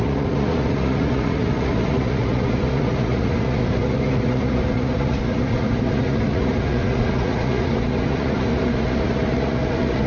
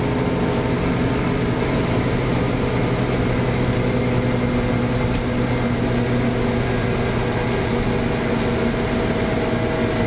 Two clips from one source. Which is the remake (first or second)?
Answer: first